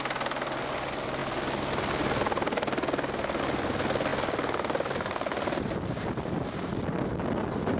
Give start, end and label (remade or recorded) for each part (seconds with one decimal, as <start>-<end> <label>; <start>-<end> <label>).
0.0-7.8 recorded